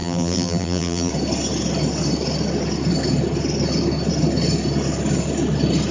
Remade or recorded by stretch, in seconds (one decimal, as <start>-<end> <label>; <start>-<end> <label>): 0.0-1.1 remade; 1.1-5.9 recorded